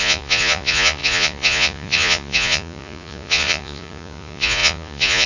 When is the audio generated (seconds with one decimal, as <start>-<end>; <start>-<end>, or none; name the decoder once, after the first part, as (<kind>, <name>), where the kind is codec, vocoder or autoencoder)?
0.0-5.3 (vocoder, Vocos)